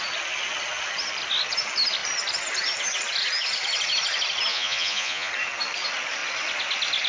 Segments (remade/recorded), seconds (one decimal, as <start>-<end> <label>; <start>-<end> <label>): 0.0-4.5 recorded; 4.5-5.3 remade; 5.3-7.1 recorded

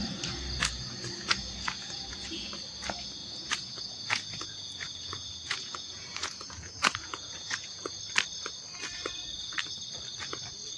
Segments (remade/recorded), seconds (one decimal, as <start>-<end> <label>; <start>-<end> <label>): 0.0-0.6 recorded; 0.6-2.5 remade; 2.5-3.2 recorded; 3.2-8.0 remade; 8.0-10.8 recorded